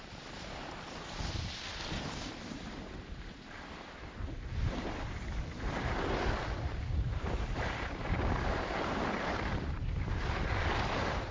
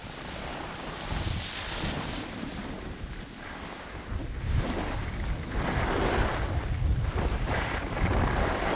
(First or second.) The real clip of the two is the second